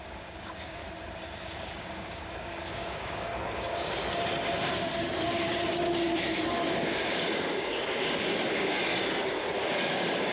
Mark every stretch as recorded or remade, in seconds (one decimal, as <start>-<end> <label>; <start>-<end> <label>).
0.0-0.8 remade; 0.8-1.6 recorded; 1.6-4.0 remade; 4.0-6.7 recorded; 6.7-8.8 remade; 8.8-9.6 recorded; 9.6-10.3 remade